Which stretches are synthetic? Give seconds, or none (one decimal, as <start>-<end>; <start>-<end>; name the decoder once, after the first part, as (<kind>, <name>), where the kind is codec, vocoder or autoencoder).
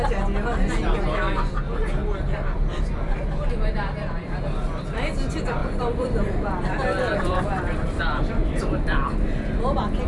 5.6-8.2 (vocoder, BigVGAN v2)